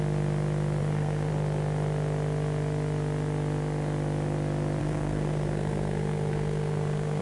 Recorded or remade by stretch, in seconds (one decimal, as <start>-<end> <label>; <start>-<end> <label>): 0.0-0.8 recorded; 0.8-1.3 remade; 1.3-4.8 recorded; 4.8-7.2 remade